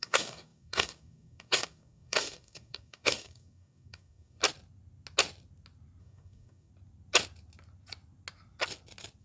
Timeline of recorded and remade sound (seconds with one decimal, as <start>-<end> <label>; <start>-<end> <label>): 0.0-4.4 remade; 4.4-6.0 recorded; 6.0-6.7 remade; 6.7-9.2 recorded